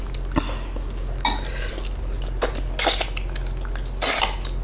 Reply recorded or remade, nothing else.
recorded